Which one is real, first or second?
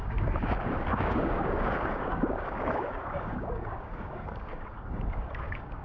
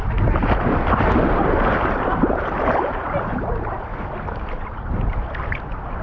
second